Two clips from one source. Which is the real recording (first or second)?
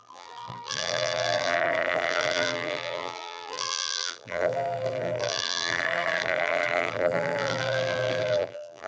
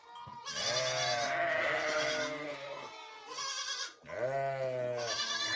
second